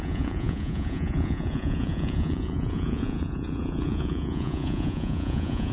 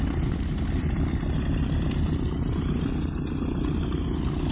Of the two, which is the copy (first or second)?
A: first